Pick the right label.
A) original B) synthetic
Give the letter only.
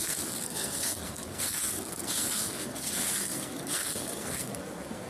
B